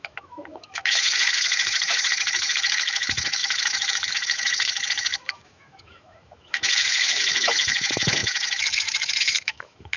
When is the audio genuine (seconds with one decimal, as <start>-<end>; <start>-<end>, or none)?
none